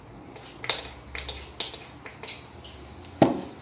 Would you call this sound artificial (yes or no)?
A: no